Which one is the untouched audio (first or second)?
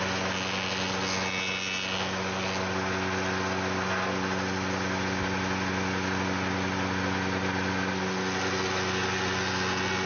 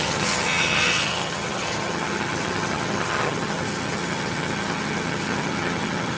first